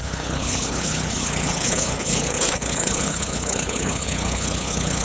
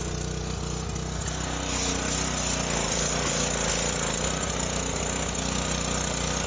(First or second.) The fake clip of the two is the first